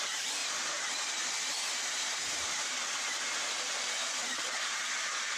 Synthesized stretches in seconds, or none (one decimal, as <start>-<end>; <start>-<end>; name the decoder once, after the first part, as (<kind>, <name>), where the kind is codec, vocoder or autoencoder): 0.4-3.6 (vocoder, BigVGAN v2); 4.2-5.4